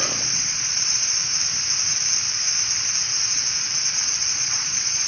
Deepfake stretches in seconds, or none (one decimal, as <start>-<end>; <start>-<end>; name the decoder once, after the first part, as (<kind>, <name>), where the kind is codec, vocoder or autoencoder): 0.0-1.2 (vocoder, Vocos); 4.3-5.1